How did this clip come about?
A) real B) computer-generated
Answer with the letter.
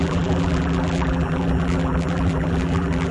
B